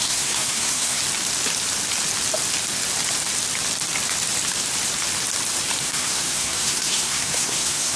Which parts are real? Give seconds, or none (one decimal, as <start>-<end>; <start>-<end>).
1.0-5.8